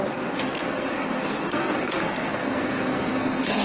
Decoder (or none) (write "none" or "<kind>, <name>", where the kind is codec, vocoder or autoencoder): codec, SNAC